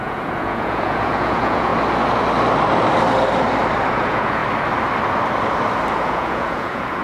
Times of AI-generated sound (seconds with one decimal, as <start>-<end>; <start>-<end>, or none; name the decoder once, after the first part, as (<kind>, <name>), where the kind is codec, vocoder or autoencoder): 0.0-1.7 (vocoder, Vocos); 3.9-4.4; 6.0-7.0